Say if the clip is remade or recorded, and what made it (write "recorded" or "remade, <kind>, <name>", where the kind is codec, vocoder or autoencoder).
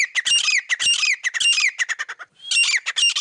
recorded